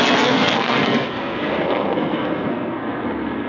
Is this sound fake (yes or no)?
yes